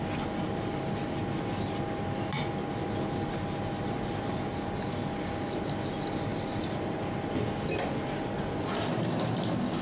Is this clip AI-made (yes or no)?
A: no